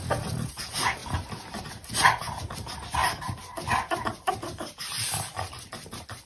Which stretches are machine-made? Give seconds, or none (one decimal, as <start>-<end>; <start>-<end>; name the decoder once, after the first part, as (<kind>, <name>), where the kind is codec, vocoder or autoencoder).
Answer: 3.0-3.6 (vocoder, BigVGAN v2)